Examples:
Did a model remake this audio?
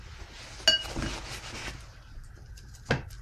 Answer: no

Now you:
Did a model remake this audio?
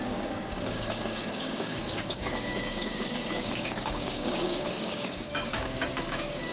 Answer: yes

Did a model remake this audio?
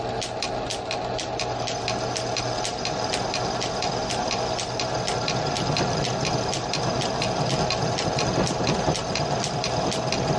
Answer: no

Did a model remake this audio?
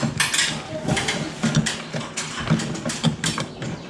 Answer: no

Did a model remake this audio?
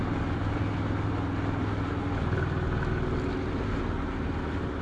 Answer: no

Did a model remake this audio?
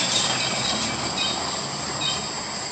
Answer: no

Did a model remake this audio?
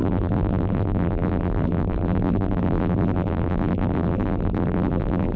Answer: yes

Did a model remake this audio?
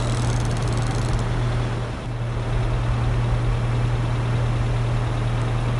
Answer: no